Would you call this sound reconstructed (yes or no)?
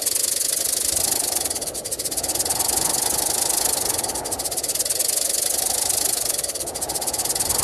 no